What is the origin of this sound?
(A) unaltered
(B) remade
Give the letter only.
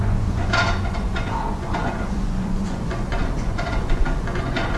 B